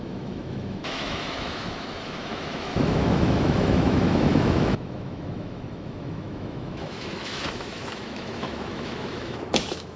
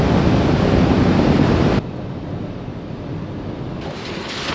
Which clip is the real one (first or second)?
second